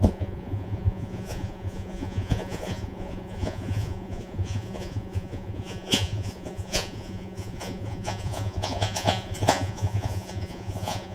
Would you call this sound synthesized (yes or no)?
yes